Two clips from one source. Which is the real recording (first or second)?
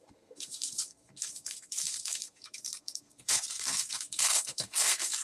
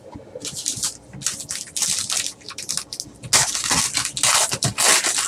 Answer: second